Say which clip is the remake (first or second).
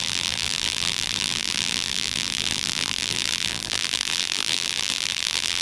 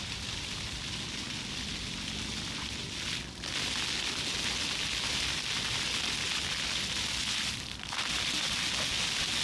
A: first